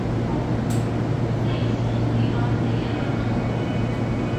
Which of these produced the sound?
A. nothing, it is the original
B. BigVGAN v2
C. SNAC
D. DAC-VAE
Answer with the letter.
A